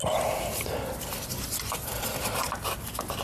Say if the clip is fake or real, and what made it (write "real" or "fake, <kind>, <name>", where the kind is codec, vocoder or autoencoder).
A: real